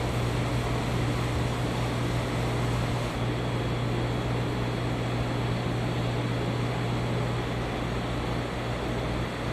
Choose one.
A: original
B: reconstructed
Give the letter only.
A